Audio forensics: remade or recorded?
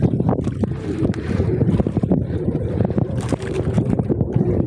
remade